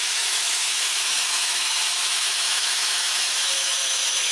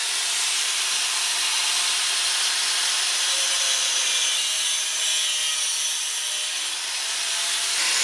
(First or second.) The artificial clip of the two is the first